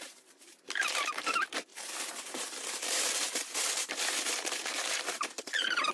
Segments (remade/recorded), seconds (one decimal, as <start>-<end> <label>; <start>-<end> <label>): 0.0-5.9 remade